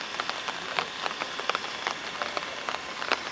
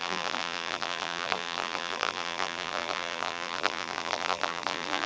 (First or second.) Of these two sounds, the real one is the first